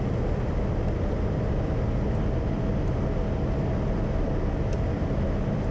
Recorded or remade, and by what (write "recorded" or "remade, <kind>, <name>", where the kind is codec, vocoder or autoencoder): recorded